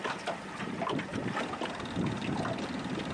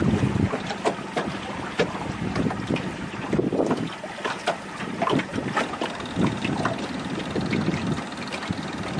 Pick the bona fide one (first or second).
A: first